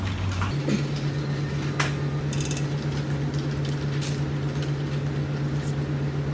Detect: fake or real real